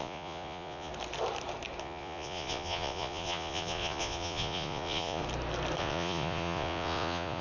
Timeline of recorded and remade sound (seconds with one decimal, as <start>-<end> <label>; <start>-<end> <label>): 0.0-0.9 remade; 0.9-1.8 recorded; 1.8-5.2 remade; 5.2-5.8 recorded; 5.8-7.4 remade